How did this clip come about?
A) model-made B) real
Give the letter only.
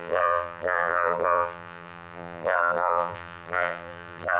A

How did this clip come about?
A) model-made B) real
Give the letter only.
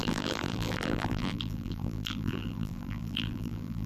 A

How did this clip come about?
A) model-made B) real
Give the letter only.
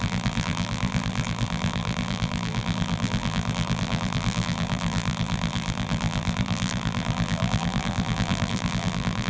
A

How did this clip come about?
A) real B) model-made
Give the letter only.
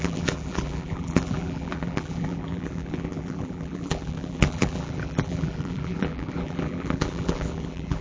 B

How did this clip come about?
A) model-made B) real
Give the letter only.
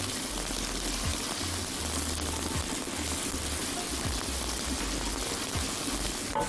B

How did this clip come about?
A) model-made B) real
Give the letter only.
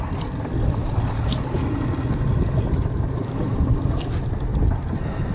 B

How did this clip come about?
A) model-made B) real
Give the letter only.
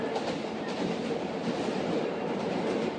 A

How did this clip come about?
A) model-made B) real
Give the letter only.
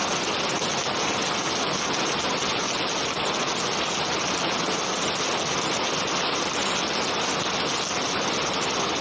B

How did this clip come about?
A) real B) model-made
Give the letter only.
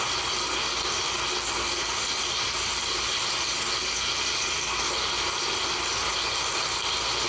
A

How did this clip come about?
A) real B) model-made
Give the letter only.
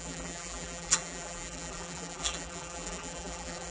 B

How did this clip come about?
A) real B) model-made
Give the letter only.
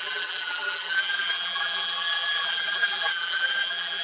B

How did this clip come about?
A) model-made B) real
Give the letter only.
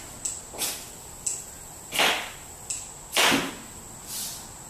B